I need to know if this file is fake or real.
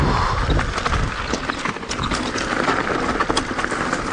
real